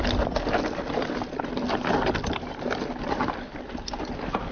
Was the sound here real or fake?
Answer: real